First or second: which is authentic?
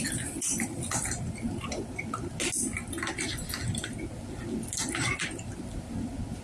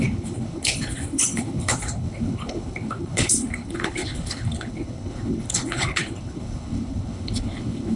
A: first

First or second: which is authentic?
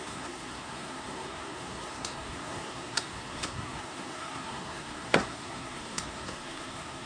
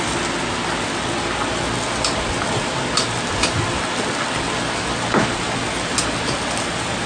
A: second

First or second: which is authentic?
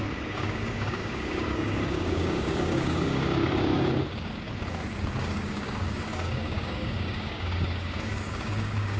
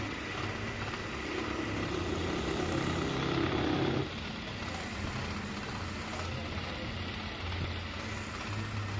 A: second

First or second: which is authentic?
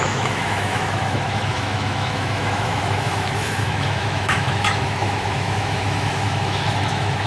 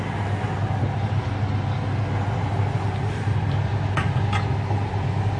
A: second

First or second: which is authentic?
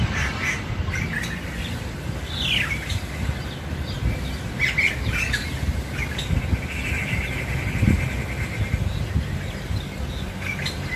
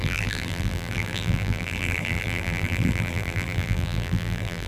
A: first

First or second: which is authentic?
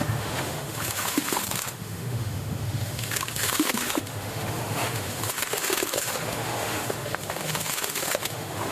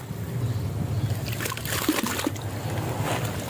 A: second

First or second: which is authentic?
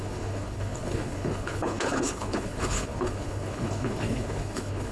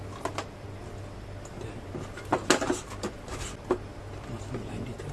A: second